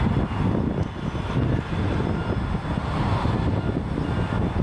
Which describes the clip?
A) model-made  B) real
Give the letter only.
B